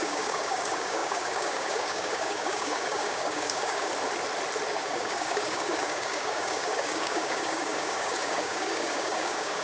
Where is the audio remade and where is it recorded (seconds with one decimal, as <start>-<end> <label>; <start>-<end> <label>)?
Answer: 0.0-3.9 remade; 3.9-4.7 recorded; 4.7-9.6 remade